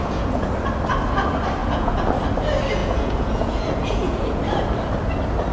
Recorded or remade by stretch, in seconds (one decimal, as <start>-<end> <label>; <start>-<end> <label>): 0.0-0.5 remade; 0.5-1.6 recorded; 1.6-2.1 remade; 2.1-2.8 recorded; 2.8-4.4 remade; 4.4-5.5 recorded

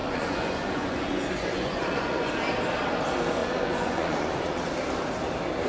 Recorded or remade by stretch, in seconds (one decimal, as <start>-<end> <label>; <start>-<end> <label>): 0.0-2.3 remade; 2.3-3.4 recorded; 3.4-4.7 remade; 4.7-5.7 recorded